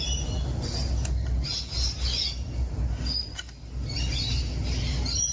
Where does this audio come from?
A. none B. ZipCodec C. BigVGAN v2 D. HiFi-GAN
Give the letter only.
A